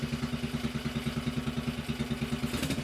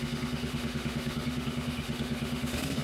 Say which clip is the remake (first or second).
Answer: second